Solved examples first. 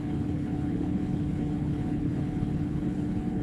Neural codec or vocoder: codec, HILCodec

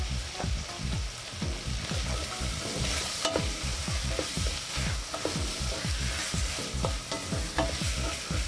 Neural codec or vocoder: none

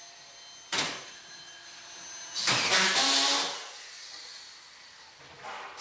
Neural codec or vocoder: none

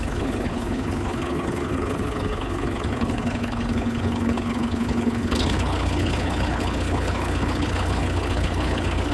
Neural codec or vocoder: codec, HILCodec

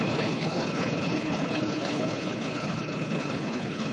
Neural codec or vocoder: codec, HILCodec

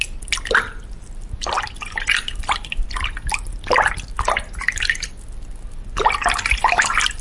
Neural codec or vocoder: none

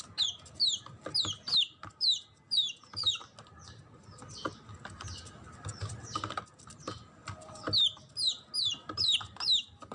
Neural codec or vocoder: none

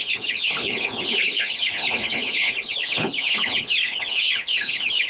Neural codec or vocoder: codec, HILCodec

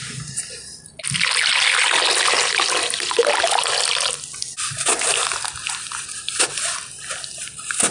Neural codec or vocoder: none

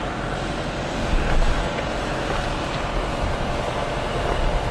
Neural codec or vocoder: none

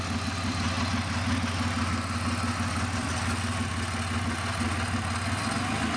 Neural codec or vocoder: none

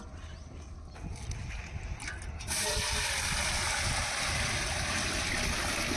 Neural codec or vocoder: none